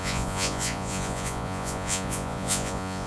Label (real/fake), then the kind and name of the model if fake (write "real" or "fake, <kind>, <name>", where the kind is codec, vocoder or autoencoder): fake, vocoder, Vocos